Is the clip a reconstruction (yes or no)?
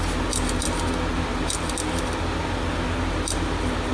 no